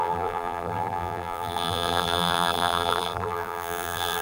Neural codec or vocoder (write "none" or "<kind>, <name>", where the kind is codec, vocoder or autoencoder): vocoder, BigVGAN v2